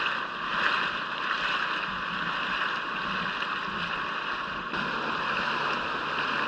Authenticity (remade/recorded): recorded